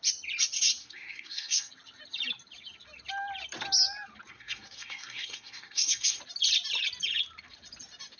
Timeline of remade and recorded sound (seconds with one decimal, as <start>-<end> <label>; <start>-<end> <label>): 0.0-0.8 recorded; 0.8-1.7 remade; 1.7-4.3 recorded; 4.3-6.2 remade; 6.2-8.2 recorded